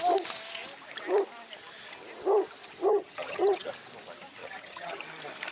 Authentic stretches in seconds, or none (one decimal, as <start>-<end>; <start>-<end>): 0.0-2.9; 3.7-4.4; 5.0-5.5